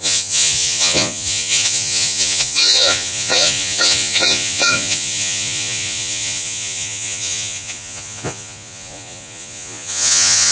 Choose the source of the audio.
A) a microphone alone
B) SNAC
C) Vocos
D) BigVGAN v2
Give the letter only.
C